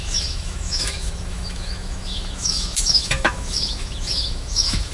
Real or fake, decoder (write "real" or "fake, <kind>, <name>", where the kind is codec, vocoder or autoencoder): fake, autoencoder, DAC-VAE